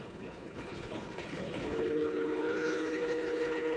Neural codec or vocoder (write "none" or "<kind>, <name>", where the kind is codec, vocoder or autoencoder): codec, HILCodec